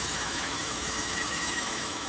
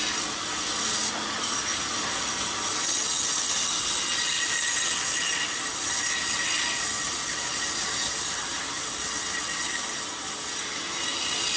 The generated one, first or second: first